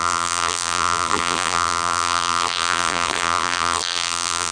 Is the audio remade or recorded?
remade